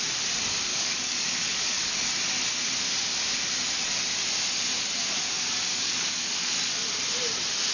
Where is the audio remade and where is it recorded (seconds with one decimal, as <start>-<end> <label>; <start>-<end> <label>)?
0.0-0.7 recorded; 0.7-2.2 remade; 2.2-5.7 recorded; 5.7-6.5 remade; 6.5-7.7 recorded